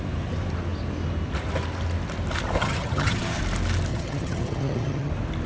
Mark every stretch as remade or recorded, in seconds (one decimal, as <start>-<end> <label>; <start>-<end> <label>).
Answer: 0.0-2.6 recorded; 2.6-3.4 remade; 3.4-3.9 recorded; 3.9-5.1 remade; 5.1-5.5 recorded